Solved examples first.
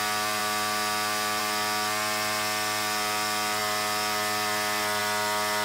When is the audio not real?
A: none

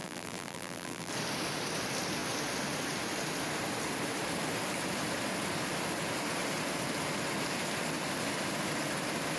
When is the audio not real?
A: 0.0-1.1 (vocoder, BigVGAN v2)

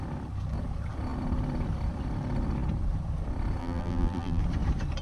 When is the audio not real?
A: 3.6-4.4 (vocoder, BigVGAN v2)

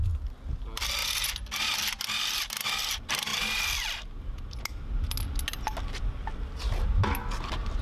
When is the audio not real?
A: none

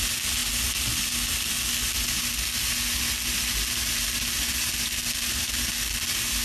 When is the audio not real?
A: none